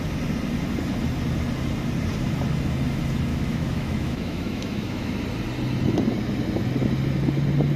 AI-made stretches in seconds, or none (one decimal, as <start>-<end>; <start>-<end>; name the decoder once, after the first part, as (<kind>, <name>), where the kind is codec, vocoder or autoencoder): 3.3-5.2 (autoencoder, DAC-VAE)